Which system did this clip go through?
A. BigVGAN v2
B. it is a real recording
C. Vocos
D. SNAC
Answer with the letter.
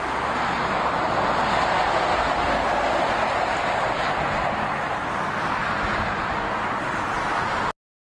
B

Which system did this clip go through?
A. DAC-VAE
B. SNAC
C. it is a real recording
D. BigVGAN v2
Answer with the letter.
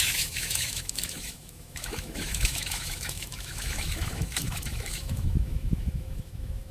A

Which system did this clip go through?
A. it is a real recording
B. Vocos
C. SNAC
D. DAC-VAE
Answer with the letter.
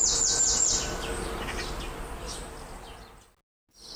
A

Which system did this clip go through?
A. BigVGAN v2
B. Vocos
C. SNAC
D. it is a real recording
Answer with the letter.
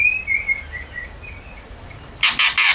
A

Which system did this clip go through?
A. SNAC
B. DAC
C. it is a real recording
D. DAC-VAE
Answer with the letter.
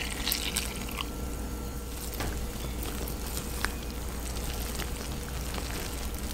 C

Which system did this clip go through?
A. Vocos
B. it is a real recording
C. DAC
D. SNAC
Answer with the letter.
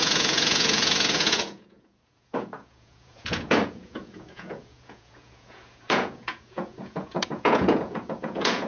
A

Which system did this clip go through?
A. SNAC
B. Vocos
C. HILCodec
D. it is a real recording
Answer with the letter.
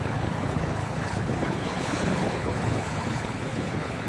C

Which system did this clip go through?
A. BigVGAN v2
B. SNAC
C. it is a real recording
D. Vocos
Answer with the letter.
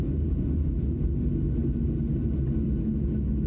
C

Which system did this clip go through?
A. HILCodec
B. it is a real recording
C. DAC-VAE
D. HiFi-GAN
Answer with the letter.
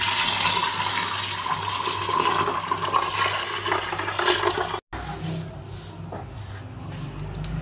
B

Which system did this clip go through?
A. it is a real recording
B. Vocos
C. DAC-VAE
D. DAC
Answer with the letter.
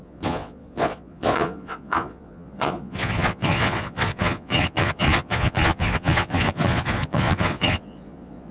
B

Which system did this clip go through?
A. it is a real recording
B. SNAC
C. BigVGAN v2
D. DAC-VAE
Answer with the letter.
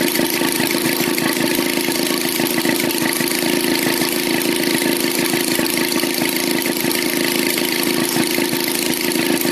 A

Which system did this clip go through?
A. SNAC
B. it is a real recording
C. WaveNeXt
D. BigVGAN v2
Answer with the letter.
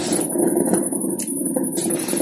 D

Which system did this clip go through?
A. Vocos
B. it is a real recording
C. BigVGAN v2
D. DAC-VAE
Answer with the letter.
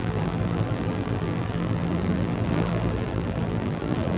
C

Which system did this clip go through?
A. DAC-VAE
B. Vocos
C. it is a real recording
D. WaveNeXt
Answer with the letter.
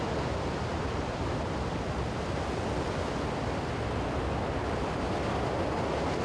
C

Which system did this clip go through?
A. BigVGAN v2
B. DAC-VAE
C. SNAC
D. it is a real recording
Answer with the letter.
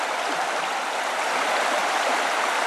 D